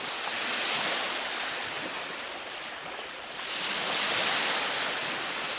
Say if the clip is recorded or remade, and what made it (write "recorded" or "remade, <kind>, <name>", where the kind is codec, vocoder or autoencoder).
recorded